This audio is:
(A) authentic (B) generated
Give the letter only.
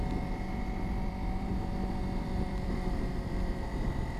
B